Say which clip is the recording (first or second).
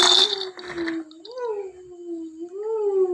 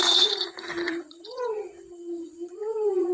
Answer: first